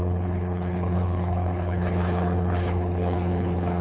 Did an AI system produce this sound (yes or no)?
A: yes